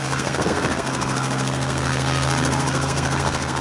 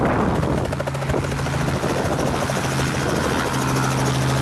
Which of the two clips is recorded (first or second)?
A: second